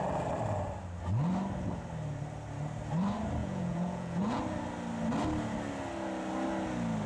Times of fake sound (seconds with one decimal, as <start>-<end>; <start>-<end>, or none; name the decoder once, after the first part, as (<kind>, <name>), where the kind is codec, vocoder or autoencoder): 3.4-4.4 (vocoder, Vocos)